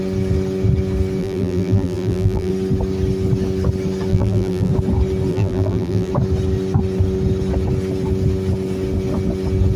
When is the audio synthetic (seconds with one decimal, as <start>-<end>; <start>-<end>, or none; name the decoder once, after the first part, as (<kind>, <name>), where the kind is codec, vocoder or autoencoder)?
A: 1.2-2.5 (vocoder, BigVGAN v2); 4.1-4.7; 5.3-6.1